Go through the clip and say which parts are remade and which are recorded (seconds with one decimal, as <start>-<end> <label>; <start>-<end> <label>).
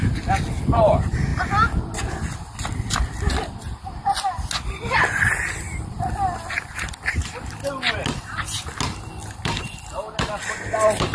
0.0-11.1 recorded